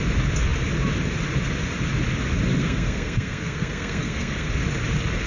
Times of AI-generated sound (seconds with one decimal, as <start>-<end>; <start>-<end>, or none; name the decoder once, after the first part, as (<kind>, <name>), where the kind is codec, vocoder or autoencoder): 2.6-4.5 (codec, SNAC)